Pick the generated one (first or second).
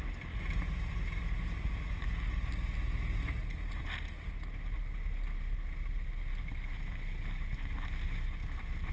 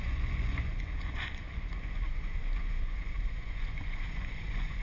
second